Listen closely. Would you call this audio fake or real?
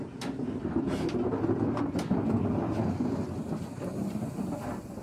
real